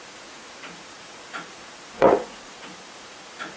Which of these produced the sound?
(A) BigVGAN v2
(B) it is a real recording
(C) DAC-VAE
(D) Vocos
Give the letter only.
D